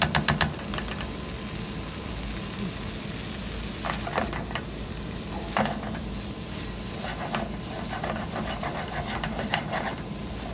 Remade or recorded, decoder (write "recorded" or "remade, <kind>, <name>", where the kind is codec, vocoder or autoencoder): recorded